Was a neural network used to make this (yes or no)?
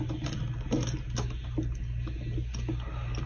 no